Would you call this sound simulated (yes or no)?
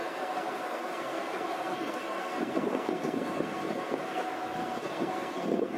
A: yes